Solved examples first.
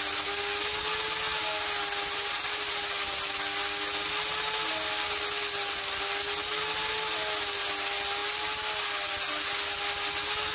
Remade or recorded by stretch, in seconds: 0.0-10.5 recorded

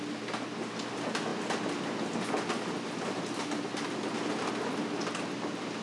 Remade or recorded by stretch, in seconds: 0.0-5.8 recorded

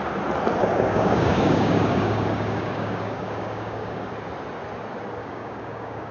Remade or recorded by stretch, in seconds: 0.0-0.6 recorded; 0.6-4.1 remade; 4.1-5.2 recorded; 5.2-6.1 remade

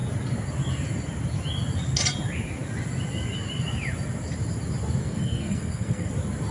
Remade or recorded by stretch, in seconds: 0.0-5.0 recorded; 5.0-6.1 remade; 6.1-6.5 recorded

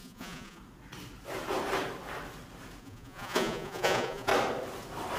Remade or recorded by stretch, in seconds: 0.0-0.6 remade; 0.6-2.8 recorded; 2.8-4.3 remade; 4.3-5.2 recorded

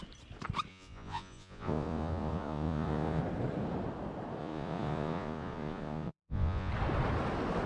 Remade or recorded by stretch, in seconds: 0.0-0.7 recorded; 0.7-3.2 remade; 3.2-4.4 recorded; 4.4-6.7 remade; 6.7-7.7 recorded

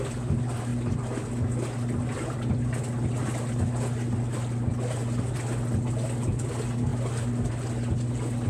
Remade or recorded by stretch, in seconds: 0.0-8.5 recorded